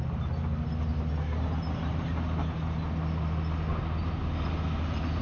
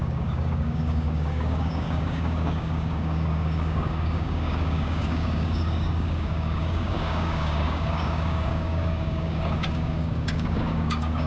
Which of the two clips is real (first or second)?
first